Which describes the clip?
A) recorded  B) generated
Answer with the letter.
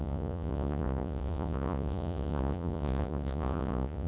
B